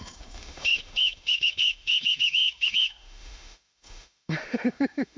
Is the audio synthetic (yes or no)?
yes